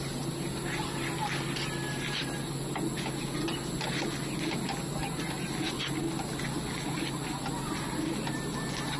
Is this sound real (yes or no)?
yes